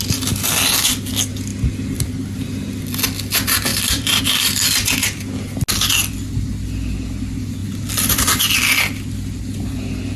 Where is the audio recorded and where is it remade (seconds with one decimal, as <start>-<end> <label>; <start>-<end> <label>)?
0.0-3.7 recorded; 3.7-4.4 remade; 4.4-7.6 recorded; 7.6-8.4 remade; 8.4-10.2 recorded